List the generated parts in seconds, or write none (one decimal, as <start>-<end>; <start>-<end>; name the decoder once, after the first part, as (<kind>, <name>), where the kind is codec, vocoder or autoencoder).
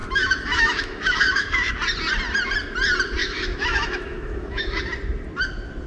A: 0.0-1.7 (autoencoder, DAC-VAE); 3.2-4.8